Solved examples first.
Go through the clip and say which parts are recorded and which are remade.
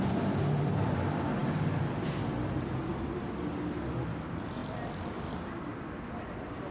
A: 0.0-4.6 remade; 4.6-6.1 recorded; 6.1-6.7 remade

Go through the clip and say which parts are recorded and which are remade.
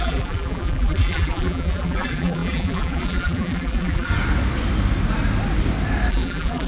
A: 0.0-4.1 remade; 4.1-6.1 recorded; 6.1-6.7 remade